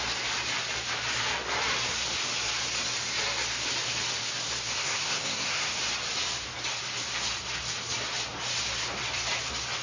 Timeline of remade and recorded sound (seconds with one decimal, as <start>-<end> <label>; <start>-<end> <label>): 0.0-4.8 recorded; 4.8-5.7 remade; 5.7-9.8 recorded